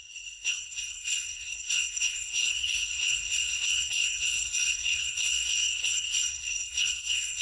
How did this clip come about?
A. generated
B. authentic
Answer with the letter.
A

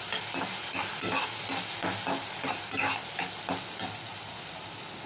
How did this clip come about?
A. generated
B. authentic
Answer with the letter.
B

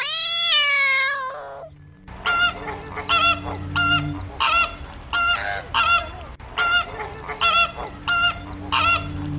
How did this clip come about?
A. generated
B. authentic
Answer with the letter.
B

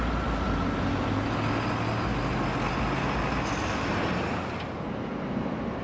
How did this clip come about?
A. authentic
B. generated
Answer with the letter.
A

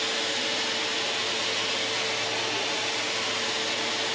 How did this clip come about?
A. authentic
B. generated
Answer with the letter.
A